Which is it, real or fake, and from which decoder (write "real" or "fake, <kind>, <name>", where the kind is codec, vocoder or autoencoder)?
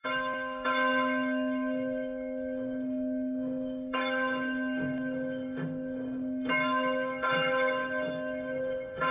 fake, autoencoder, DAC-VAE